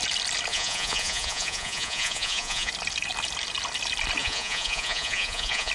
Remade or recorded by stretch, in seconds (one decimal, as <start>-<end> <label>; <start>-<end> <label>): 0.0-0.5 recorded; 0.5-2.7 remade; 2.7-4.2 recorded; 4.2-5.7 remade